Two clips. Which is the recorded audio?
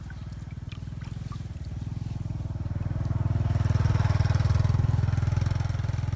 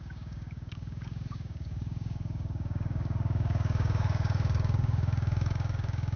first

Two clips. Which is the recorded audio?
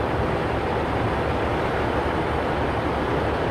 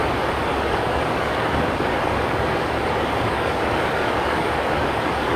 first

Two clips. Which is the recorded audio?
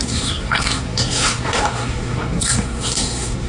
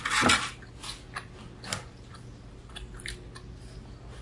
second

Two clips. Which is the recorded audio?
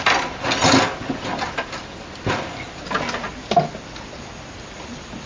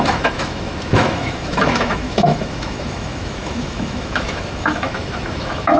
first